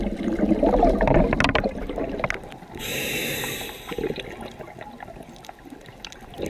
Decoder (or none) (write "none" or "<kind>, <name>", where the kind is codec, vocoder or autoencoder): none